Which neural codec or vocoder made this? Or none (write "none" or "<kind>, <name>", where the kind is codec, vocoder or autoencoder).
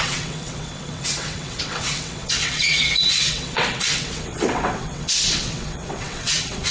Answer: vocoder, WaveNeXt